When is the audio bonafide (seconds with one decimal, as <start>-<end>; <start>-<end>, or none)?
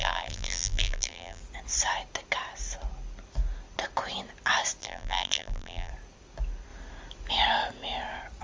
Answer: 1.4-4.8; 5.9-8.4